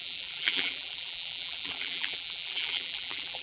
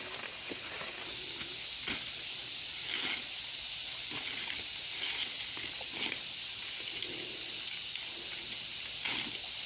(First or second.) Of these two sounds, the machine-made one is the first